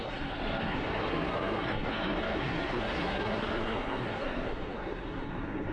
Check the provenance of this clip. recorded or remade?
remade